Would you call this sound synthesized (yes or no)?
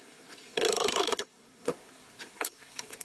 yes